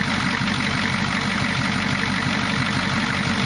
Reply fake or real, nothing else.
real